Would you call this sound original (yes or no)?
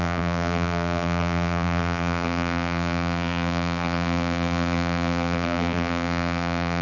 no